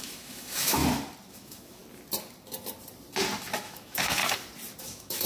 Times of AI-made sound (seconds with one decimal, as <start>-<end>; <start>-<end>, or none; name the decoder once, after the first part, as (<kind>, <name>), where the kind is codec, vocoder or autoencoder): 0.0-0.8 (autoencoder, DAC-VAE); 1.3-1.8; 3.6-4.2; 4.8-5.3